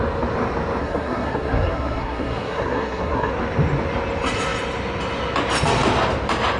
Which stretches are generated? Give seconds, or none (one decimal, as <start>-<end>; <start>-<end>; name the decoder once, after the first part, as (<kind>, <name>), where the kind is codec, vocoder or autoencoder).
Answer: 0.8-3.3 (codec, SNAC)